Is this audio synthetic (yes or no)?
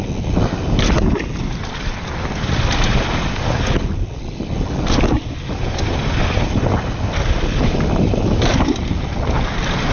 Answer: no